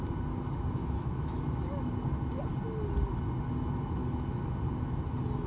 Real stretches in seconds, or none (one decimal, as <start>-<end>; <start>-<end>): 0.0-0.8; 1.4-5.5